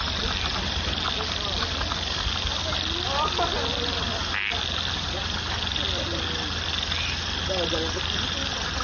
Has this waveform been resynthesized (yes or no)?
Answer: no